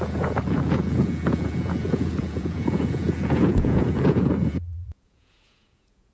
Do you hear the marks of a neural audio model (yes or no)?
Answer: yes